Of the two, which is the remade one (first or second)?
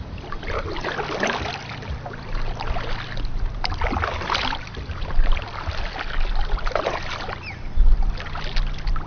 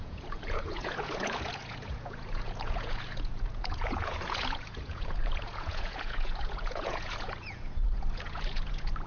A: second